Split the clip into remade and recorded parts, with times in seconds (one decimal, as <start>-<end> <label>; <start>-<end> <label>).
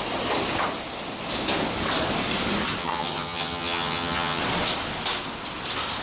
0.0-2.8 recorded; 2.8-4.4 remade; 4.4-6.0 recorded